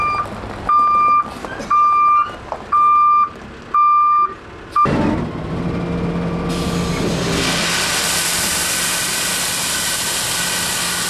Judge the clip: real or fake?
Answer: real